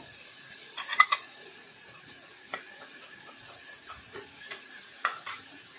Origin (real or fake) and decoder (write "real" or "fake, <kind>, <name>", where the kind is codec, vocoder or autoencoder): fake, vocoder, Vocos